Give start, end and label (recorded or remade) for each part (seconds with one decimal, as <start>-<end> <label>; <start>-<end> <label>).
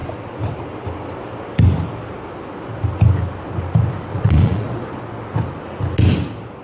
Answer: 0.0-4.1 recorded; 4.1-5.0 remade; 5.0-6.6 recorded